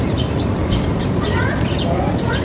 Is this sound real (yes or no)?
yes